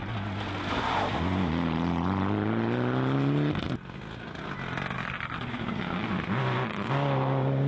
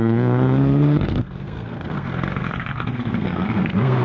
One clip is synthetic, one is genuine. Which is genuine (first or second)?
first